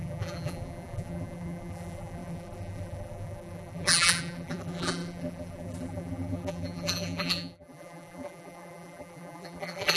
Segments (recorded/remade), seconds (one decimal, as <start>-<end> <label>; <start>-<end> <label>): 0.0-10.0 remade